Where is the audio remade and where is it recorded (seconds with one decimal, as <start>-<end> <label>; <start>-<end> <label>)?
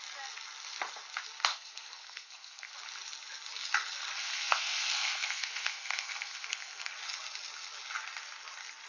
0.0-1.5 recorded; 1.5-2.7 remade; 2.7-4.2 recorded; 4.2-6.9 remade; 6.9-8.9 recorded